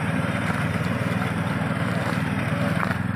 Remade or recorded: remade